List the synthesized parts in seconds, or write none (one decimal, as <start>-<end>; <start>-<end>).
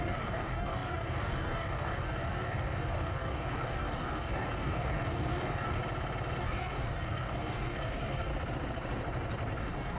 0.0-5.8; 6.4-8.3; 9.6-10.0